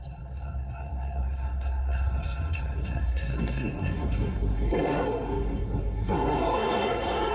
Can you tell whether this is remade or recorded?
remade